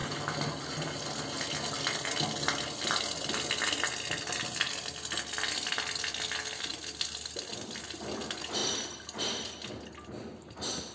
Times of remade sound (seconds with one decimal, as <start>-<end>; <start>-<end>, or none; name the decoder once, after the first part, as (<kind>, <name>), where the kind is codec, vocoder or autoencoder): 8.6-9.8 (vocoder, BigVGAN v2)